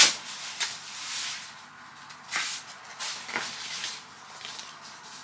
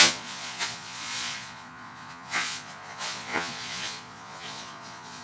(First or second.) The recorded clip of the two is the first